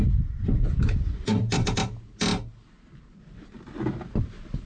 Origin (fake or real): real